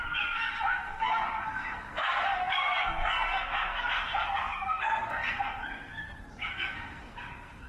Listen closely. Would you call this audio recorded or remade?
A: remade